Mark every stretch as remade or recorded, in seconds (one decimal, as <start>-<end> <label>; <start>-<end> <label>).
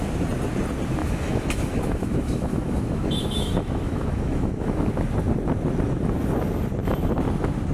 0.0-1.0 recorded; 1.0-4.9 remade; 4.9-7.7 recorded